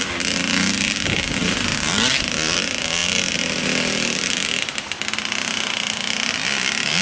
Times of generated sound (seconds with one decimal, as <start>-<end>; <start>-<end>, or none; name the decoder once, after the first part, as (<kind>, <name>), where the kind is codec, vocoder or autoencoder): none